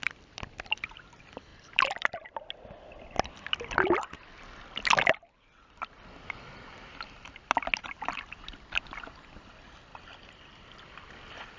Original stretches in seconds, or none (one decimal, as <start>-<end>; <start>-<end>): 0.0-1.5; 2.5-9.9; 11.1-11.6